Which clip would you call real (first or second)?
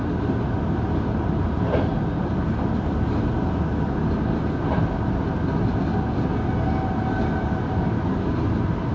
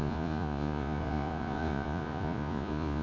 first